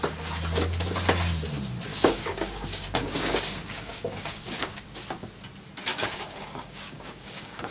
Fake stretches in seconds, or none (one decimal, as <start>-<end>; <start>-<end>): 1.9-4.8; 5.9-7.7